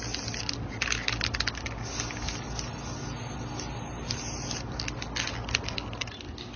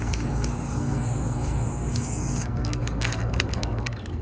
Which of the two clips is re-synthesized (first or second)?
second